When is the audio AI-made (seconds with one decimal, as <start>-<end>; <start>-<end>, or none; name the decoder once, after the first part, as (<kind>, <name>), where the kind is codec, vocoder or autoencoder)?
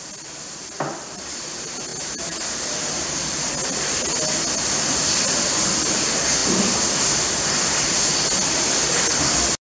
none